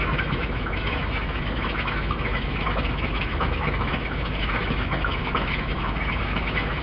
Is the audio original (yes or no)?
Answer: no